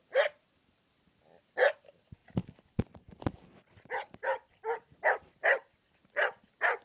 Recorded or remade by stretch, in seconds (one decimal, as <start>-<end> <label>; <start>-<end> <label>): 0.0-6.8 recorded